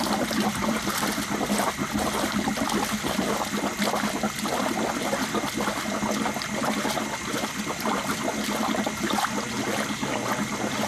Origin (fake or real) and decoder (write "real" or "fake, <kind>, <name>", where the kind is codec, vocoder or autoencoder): real